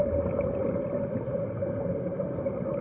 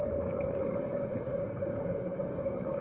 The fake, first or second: second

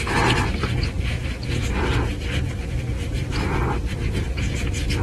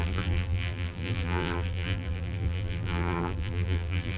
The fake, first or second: second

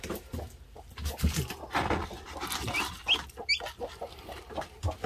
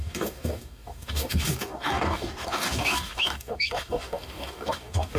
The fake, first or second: second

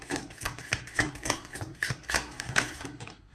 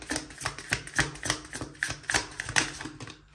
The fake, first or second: first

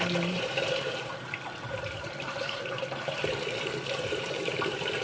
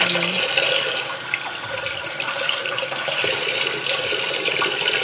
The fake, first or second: first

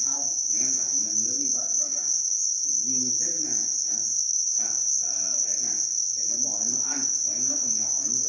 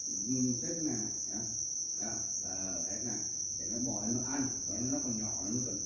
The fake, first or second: first